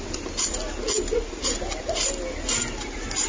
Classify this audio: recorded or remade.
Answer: recorded